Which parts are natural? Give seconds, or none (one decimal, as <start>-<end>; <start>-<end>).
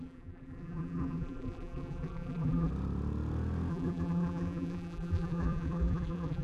2.7-3.7